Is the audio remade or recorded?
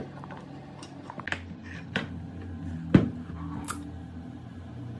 recorded